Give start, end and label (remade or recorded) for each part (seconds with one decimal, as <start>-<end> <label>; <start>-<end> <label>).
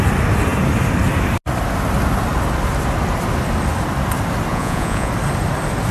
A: 0.0-4.5 recorded; 4.5-5.1 remade; 5.1-5.9 recorded